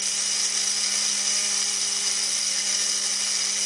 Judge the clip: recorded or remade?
recorded